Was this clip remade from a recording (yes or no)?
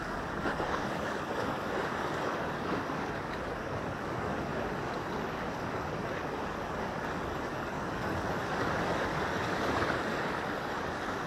yes